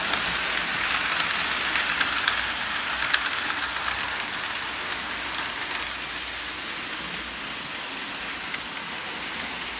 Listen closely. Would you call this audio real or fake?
real